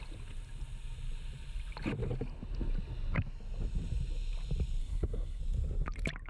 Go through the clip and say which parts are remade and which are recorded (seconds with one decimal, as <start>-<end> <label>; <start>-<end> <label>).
0.0-4.8 recorded; 4.8-5.4 remade; 5.4-6.3 recorded